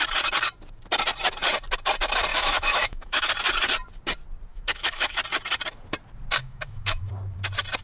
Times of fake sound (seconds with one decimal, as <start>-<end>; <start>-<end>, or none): 2.3-3.3; 4.5-5.2; 6.4-7.1